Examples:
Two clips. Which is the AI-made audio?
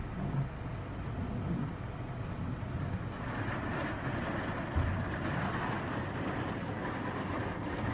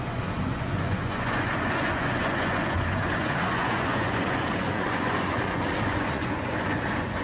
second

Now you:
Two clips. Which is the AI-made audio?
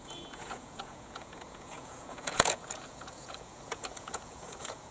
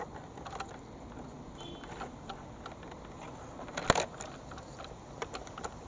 first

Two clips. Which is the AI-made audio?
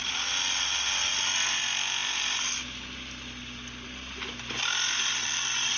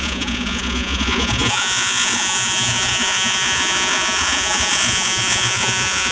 second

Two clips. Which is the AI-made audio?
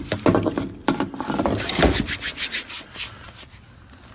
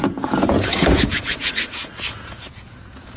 second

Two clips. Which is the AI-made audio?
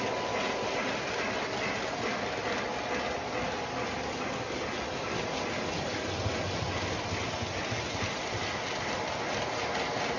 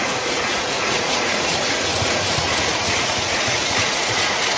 second